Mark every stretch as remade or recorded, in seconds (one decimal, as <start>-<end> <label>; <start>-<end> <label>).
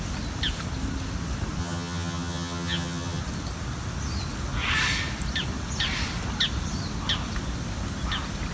0.0-1.6 recorded; 1.6-3.2 remade; 3.2-8.5 recorded